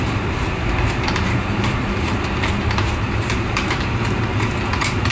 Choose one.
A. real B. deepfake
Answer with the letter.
B